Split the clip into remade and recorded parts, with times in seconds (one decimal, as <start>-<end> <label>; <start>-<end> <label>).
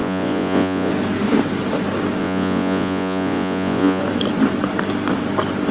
0.0-0.9 remade; 0.9-2.2 recorded; 2.2-4.0 remade; 4.0-5.7 recorded